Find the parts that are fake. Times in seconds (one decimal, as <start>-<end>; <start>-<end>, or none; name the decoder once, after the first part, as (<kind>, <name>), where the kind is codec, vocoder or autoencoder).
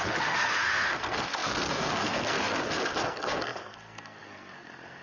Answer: 0.0-5.0 (codec, SNAC)